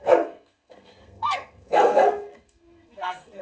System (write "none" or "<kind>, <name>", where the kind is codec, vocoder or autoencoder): codec, SNAC